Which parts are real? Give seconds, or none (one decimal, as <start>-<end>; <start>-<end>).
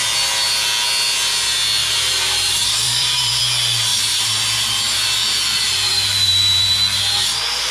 0.0-1.8; 3.4-3.9; 7.0-7.7